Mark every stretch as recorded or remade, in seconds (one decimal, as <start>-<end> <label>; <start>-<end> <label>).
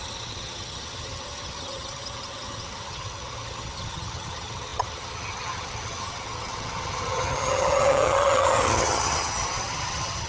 0.0-10.3 remade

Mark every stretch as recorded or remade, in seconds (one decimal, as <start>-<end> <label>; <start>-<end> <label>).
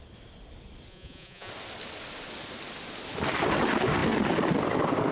0.0-0.9 recorded; 0.9-1.5 remade; 1.5-5.1 recorded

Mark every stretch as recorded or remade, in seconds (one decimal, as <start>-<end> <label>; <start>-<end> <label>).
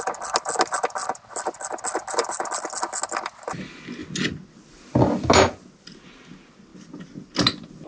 0.0-7.9 recorded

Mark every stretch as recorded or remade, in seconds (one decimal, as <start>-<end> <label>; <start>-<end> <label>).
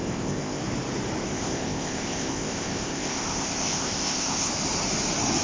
0.0-0.6 remade; 0.6-1.3 recorded; 1.3-4.5 remade; 4.5-5.4 recorded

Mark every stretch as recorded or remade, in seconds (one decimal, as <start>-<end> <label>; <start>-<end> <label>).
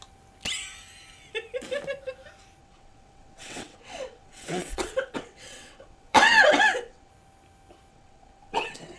0.0-2.6 recorded; 2.6-7.1 remade; 7.1-7.9 recorded; 7.9-9.0 remade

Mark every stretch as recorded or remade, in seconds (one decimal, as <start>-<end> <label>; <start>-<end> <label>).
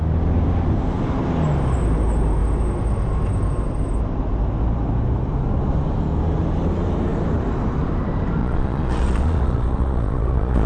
0.0-8.4 recorded; 8.4-10.7 remade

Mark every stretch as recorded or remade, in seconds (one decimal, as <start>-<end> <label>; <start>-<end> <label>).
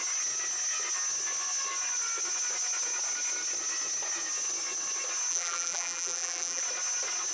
0.0-5.3 recorded; 5.3-6.6 remade; 6.6-7.3 recorded